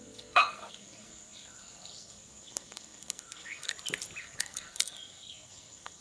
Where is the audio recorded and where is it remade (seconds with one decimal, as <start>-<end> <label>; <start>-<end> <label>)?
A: 0.0-3.7 remade; 3.7-4.2 recorded; 4.2-6.0 remade